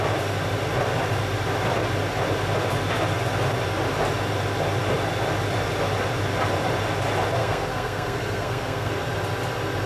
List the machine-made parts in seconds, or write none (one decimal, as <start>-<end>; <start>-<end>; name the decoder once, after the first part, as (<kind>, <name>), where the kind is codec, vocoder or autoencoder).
7.4-8.9 (codec, SNAC)